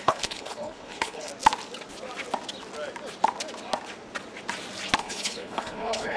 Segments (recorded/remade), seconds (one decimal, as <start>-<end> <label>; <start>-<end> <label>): 0.0-1.3 remade; 1.3-5.0 recorded; 5.0-6.2 remade